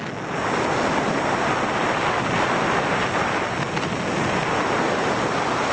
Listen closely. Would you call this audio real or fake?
real